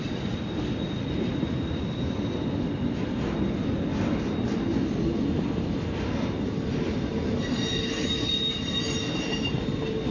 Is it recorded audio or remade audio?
recorded